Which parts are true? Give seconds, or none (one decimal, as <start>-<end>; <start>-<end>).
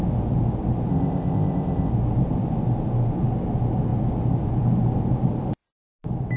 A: 0.0-0.9; 1.9-6.4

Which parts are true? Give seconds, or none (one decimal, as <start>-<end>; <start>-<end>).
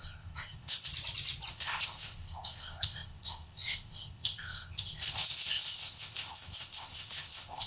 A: 0.9-1.5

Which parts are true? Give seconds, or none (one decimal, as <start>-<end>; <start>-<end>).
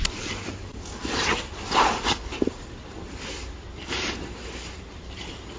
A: 0.0-5.6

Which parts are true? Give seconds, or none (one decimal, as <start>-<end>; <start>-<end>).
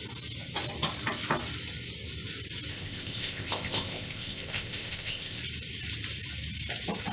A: 0.0-2.7; 5.4-7.1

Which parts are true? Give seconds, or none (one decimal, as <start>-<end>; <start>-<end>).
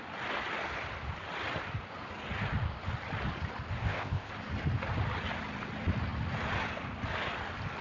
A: 0.0-3.8; 4.3-7.8